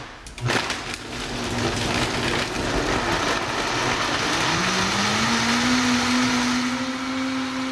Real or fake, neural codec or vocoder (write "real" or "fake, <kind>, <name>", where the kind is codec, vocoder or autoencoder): real